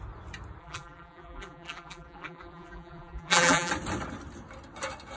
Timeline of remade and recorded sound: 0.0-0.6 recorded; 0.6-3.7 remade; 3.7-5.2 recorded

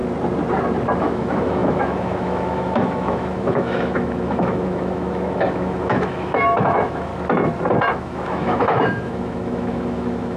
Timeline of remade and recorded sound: 0.0-1.0 recorded; 1.0-7.1 remade; 7.1-7.9 recorded; 7.9-10.4 remade

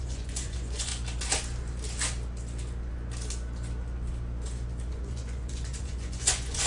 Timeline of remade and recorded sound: 0.0-0.9 remade; 0.9-4.9 recorded; 4.9-6.7 remade

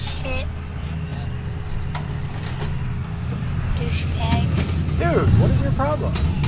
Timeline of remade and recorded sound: 0.0-6.5 recorded

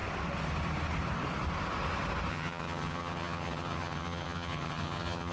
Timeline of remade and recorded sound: 0.0-2.3 recorded; 2.3-5.3 remade

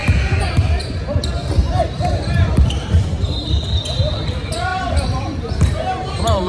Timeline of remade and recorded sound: 0.0-1.2 remade; 1.2-1.6 recorded; 1.6-3.6 remade; 3.6-4.7 recorded; 4.7-6.5 remade

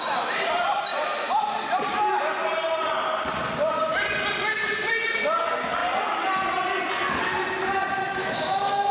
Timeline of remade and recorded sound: 0.0-8.0 recorded; 8.0-8.9 remade